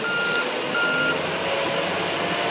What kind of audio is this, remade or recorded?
recorded